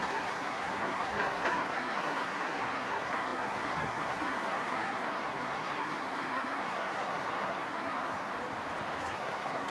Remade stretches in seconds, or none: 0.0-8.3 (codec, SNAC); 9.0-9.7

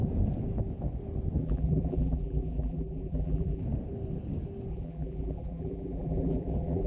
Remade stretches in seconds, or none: 1.4-3.6 (vocoder, BigVGAN v2); 4.7-6.9

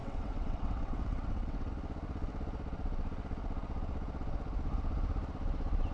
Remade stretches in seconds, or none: 0.0-1.7 (vocoder, WaveNeXt)

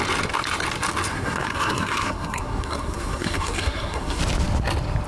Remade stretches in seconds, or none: 1.1-4.2 (codec, SNAC)

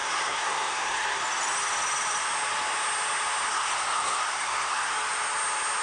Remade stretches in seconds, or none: 0.0-1.2 (codec, SNAC); 3.5-4.9

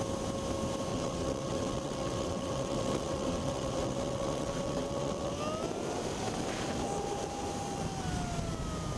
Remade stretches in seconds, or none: 0.9-5.3 (vocoder, WaveNeXt)

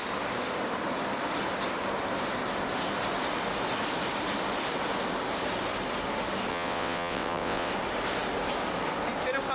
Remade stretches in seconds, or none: 6.5-7.7 (vocoder, WaveNeXt)